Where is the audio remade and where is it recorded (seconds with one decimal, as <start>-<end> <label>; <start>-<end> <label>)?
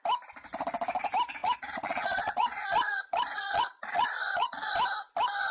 0.0-1.4 recorded; 1.4-4.7 remade; 4.7-5.5 recorded